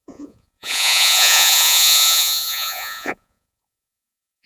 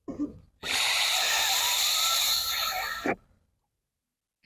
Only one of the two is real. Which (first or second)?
second